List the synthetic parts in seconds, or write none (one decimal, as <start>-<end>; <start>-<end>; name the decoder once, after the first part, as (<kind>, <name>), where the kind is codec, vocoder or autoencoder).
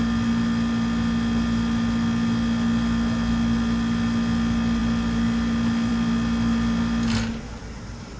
none